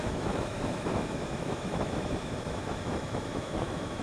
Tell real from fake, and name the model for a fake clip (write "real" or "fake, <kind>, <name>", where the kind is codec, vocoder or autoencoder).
fake, autoencoder, DAC-VAE